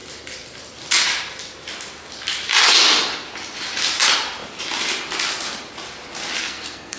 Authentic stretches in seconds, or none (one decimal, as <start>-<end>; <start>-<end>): 0.0-6.4